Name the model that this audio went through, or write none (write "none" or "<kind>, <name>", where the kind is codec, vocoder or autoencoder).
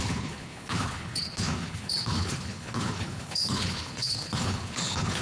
codec, HILCodec